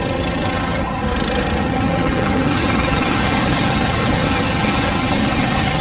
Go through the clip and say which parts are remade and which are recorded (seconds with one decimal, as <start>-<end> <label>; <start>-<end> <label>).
0.0-1.0 remade; 1.0-1.6 recorded; 1.6-5.8 remade